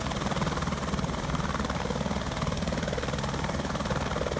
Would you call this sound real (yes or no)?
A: no